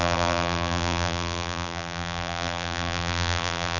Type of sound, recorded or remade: remade